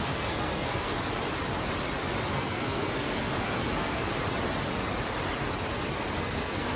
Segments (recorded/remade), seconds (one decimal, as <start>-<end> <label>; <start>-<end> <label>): 0.0-1.0 remade; 1.0-2.3 recorded; 2.3-4.1 remade; 4.1-6.2 recorded; 6.2-6.8 remade